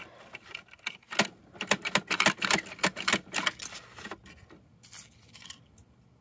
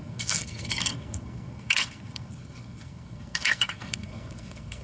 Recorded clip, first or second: first